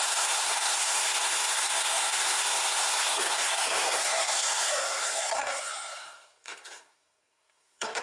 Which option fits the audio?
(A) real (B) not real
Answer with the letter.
B